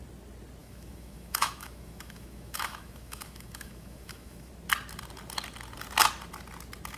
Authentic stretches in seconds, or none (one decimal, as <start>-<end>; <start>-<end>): 0.0-0.6; 4.5-7.0